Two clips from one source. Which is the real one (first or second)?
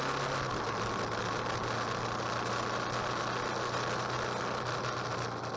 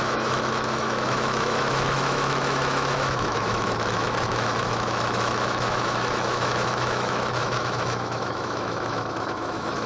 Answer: first